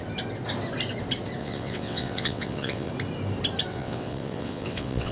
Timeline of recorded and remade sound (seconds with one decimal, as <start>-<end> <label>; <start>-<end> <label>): 0.0-1.4 recorded; 1.4-2.9 remade; 2.9-3.7 recorded; 3.7-5.1 remade